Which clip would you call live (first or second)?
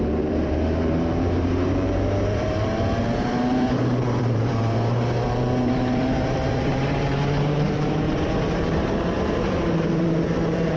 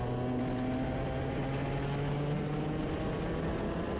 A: second